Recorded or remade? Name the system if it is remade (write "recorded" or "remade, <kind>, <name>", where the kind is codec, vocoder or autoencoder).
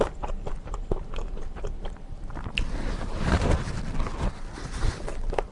remade, vocoder, BigVGAN v2